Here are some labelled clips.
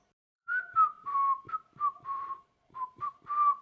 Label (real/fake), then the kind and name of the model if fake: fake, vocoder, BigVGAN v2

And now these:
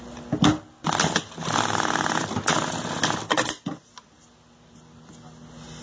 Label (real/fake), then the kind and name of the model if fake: real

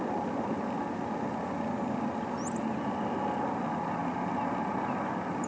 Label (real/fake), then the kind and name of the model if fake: real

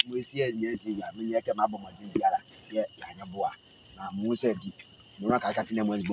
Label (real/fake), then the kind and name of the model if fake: real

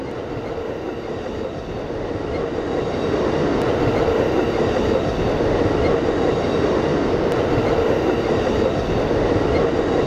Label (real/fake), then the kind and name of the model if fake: real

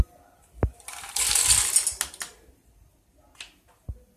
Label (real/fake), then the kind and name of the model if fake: real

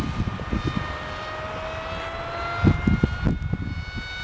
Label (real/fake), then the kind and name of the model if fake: real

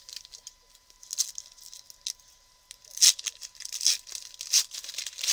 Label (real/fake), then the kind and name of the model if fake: real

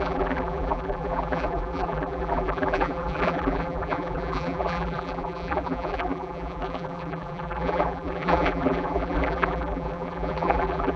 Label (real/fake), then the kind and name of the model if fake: fake, vocoder, BigVGAN v2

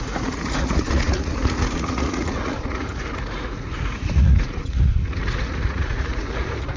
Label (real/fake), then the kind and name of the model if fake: fake, vocoder, Vocos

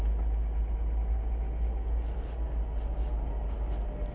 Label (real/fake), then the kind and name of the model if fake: real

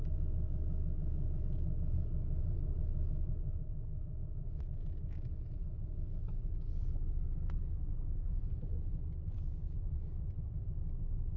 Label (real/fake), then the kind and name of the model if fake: real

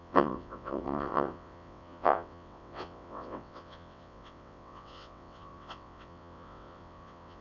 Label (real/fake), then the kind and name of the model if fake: fake, vocoder, WaveNeXt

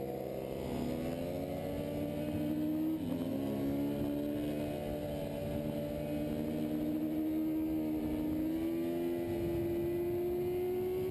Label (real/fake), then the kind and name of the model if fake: real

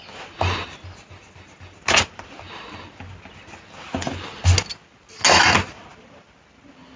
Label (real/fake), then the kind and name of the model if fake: real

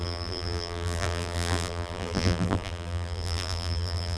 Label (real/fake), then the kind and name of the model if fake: fake, vocoder, BigVGAN v2